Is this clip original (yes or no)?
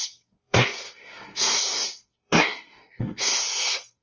no